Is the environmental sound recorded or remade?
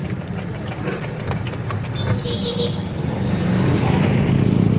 recorded